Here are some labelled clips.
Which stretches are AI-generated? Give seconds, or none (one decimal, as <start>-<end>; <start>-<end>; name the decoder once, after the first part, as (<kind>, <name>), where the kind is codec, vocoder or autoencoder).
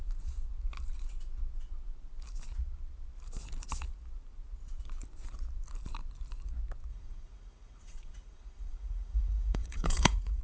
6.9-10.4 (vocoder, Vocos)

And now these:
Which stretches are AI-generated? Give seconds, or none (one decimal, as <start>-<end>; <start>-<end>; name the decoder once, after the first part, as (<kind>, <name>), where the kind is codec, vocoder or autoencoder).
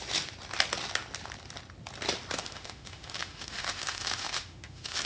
2.4-5.1 (autoencoder, DAC-VAE)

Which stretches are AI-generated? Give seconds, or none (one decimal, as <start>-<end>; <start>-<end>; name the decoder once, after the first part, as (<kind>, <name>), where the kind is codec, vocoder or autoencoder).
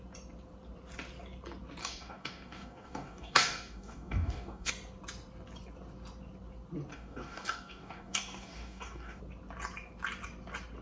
1.8-4.7 (codec, DAC); 6.9-9.2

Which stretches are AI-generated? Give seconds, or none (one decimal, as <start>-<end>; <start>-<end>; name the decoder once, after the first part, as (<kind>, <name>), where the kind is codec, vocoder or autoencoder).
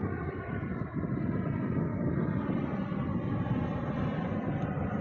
none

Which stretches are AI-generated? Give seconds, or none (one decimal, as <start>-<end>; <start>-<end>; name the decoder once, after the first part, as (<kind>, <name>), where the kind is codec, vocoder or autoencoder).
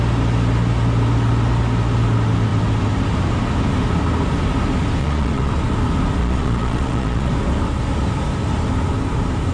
5.0-5.5 (vocoder, Vocos); 6.2-7.3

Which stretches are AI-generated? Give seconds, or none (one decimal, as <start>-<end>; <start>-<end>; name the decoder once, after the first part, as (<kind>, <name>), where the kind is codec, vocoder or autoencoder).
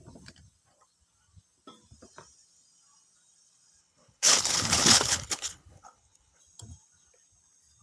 3.8-6.4 (codec, HILCodec)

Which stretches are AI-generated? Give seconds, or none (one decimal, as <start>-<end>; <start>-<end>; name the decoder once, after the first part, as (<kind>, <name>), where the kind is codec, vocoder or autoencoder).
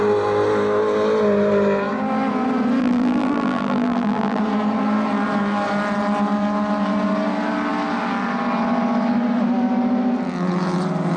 2.8-4.4 (vocoder, BigVGAN v2)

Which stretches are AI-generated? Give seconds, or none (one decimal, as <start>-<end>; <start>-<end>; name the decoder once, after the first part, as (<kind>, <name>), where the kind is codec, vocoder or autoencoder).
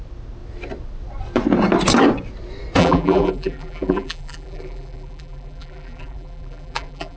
2.8-7.2 (vocoder, BigVGAN v2)